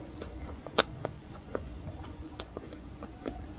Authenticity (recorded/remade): remade